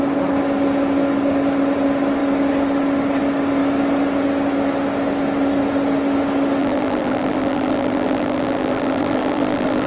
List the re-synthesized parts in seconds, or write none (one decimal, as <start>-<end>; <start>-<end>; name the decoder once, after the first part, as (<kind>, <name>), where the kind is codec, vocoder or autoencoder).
6.6-9.9 (vocoder, BigVGAN v2)